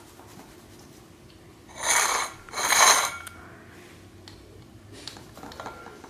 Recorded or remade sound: recorded